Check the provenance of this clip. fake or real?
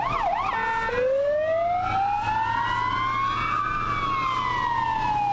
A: real